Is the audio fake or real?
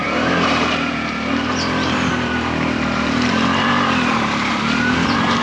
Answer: fake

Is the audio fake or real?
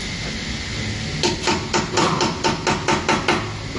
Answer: real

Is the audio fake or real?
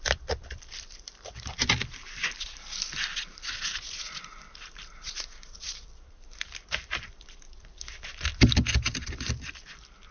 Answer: fake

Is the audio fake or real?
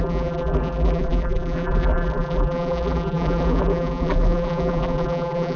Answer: fake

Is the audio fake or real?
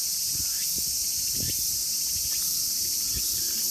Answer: real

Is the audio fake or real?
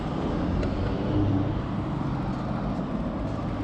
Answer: real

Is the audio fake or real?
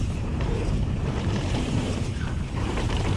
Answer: fake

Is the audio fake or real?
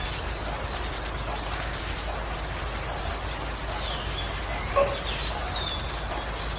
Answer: real